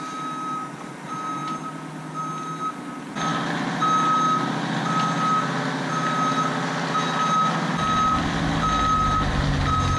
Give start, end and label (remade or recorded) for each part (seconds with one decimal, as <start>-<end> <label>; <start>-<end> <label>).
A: 0.0-10.0 recorded